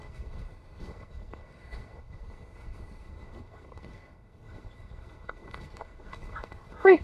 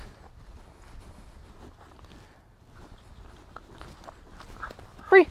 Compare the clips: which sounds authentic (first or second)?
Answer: second